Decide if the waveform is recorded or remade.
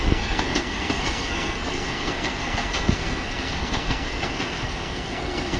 remade